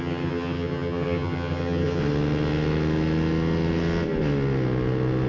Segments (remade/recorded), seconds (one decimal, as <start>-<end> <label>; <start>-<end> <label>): 0.0-2.0 remade; 2.0-5.3 recorded